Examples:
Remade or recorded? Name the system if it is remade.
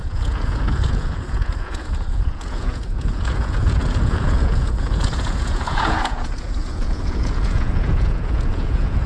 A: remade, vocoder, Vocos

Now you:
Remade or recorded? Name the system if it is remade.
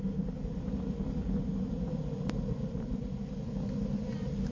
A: recorded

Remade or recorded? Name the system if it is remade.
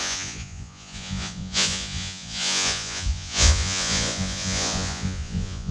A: remade, vocoder, Vocos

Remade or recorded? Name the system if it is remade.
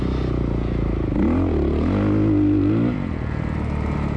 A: recorded